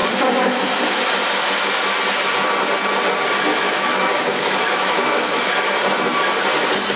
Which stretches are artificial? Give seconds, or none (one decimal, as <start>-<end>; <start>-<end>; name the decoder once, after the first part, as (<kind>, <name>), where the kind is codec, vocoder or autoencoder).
3.5-5.4 (autoencoder, DAC-VAE)